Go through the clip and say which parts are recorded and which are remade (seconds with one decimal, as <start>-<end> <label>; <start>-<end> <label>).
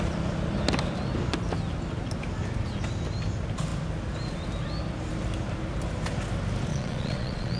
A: 0.0-6.7 recorded; 6.7-7.6 remade